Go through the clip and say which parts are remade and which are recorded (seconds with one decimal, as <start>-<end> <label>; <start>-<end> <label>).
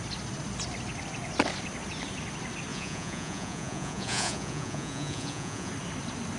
0.0-2.7 recorded; 2.7-5.7 remade; 5.7-6.4 recorded